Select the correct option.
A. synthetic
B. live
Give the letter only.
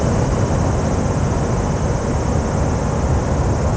B